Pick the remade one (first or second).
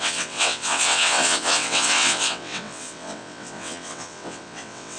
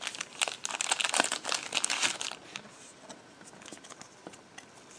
first